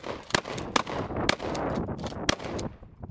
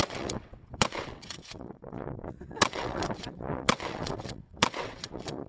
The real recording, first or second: first